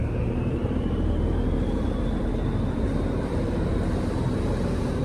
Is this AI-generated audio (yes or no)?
yes